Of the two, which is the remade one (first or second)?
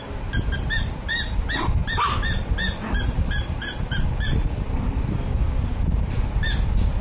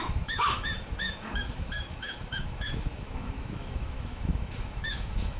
second